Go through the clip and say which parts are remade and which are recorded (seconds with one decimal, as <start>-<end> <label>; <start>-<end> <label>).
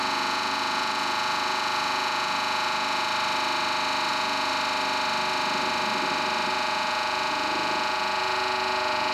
0.0-3.1 remade; 3.1-4.1 recorded; 4.1-4.5 remade; 4.5-6.5 recorded; 6.5-9.1 remade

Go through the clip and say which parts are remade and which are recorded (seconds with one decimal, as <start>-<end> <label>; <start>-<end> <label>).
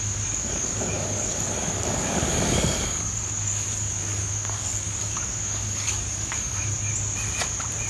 0.0-6.9 remade; 6.9-7.9 recorded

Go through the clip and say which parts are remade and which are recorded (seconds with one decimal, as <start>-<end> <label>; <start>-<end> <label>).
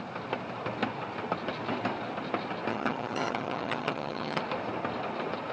0.0-2.7 recorded; 2.7-4.4 remade; 4.4-5.5 recorded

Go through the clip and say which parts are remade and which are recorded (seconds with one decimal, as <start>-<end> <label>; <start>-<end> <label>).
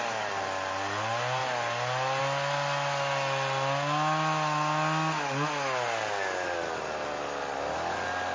0.0-8.3 recorded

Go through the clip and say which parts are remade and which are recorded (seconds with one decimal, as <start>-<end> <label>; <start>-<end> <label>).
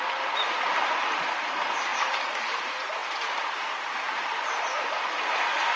0.0-5.8 remade